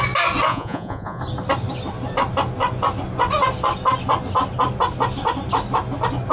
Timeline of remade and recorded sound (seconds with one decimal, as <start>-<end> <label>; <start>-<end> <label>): 0.0-0.5 recorded; 0.5-1.2 remade; 1.2-6.3 recorded